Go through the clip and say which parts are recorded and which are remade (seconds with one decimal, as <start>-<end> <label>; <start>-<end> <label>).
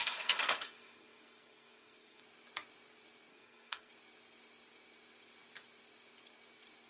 0.0-2.2 remade; 2.2-3.3 recorded; 3.3-3.9 remade; 3.9-6.9 recorded